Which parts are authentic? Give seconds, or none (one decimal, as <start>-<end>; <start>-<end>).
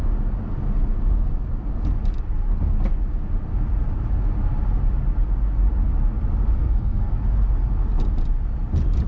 0.0-6.6; 7.1-9.1